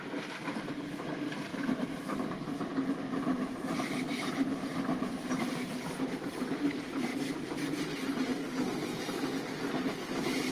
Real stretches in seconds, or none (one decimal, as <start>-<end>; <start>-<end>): 0.0-10.5